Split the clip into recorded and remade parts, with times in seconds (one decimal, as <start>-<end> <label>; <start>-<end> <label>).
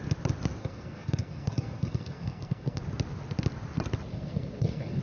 0.0-0.6 recorded; 0.6-2.8 remade; 2.8-4.1 recorded; 4.1-5.0 remade